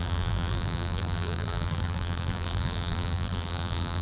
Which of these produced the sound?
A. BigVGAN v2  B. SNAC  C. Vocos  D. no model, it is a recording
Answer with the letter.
A